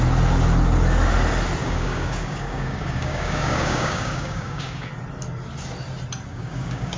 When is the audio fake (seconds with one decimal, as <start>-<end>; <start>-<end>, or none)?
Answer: 1.6-4.9; 6.3-7.0